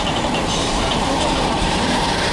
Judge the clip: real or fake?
fake